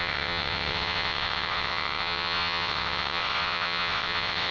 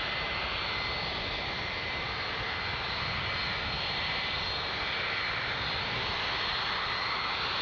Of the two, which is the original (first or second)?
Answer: second